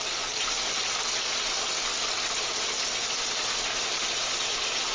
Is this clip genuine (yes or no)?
yes